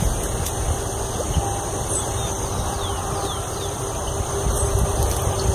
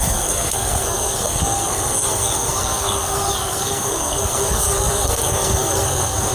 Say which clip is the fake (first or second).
second